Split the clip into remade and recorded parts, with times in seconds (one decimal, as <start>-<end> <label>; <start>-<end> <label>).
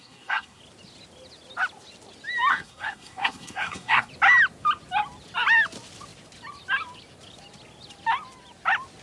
0.0-0.6 remade; 0.6-2.5 recorded; 2.5-4.1 remade; 4.1-9.0 recorded